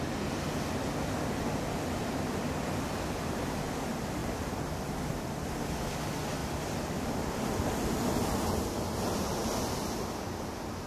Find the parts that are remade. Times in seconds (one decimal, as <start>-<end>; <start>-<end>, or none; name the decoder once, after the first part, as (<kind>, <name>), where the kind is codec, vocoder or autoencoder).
4.2-5.3 (vocoder, BigVGAN v2); 6.4-8.4